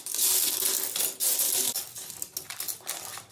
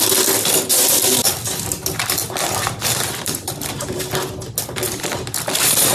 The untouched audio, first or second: first